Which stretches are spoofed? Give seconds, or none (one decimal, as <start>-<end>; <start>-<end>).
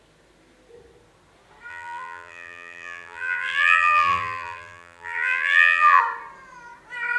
1.7-6.0